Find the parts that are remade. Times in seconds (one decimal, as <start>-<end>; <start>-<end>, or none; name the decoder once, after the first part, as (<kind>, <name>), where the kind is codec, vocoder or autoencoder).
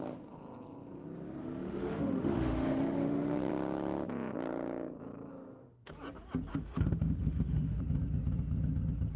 1.4-3.5 (autoencoder, DAC-VAE); 5.3-5.9; 6.5-7.8